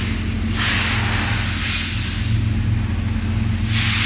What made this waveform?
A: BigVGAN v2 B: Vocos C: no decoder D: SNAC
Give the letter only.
C